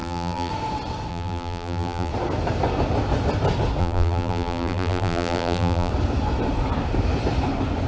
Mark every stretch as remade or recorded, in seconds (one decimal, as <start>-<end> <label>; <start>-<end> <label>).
0.0-0.5 remade; 0.5-1.1 recorded; 1.1-2.1 remade; 2.1-3.8 recorded; 3.8-5.9 remade; 5.9-7.9 recorded